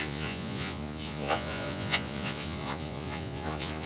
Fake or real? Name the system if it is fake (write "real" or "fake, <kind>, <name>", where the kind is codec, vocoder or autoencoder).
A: fake, vocoder, Vocos